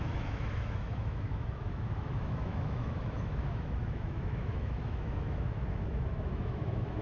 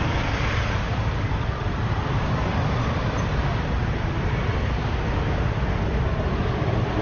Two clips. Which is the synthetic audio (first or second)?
first